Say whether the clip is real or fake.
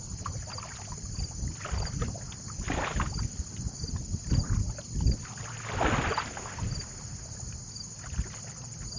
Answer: real